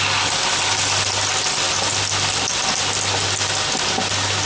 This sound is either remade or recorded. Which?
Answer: recorded